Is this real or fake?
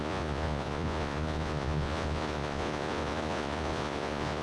fake